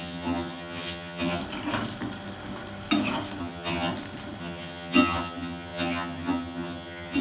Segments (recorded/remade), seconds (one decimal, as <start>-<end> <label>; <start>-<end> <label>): 0.0-1.4 remade; 1.4-3.4 recorded; 3.4-3.9 remade; 3.9-4.4 recorded; 4.4-7.2 remade